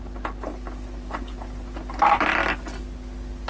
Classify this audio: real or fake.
real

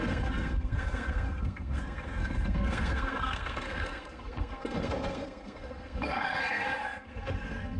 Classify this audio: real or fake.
fake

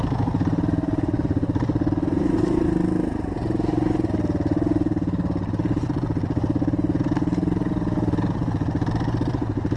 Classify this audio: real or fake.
real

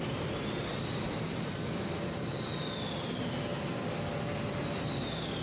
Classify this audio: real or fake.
real